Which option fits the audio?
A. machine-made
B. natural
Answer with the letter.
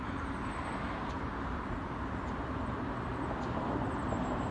B